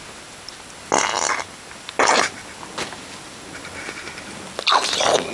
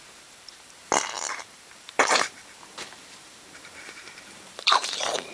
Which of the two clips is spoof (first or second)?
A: second